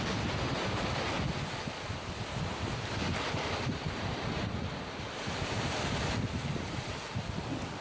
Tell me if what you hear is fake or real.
real